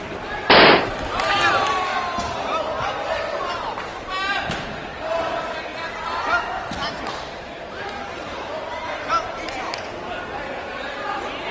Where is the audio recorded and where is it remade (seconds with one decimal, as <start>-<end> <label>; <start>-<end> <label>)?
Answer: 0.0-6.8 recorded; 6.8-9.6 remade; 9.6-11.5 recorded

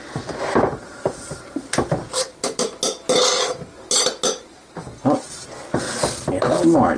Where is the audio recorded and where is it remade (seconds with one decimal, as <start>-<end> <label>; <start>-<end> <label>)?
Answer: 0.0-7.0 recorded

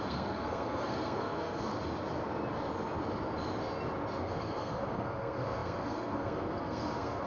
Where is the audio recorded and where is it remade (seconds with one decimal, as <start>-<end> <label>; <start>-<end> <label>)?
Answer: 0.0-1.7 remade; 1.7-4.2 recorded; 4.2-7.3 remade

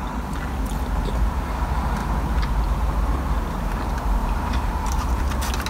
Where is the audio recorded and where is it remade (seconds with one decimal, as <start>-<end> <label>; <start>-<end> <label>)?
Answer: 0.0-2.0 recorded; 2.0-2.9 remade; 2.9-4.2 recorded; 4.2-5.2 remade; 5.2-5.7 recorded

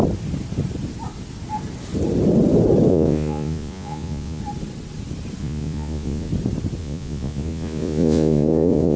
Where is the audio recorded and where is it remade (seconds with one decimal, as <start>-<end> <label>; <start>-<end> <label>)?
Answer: 0.0-2.9 recorded; 2.9-4.4 remade; 4.4-5.4 recorded; 5.4-6.3 remade; 6.3-6.8 recorded; 6.8-9.0 remade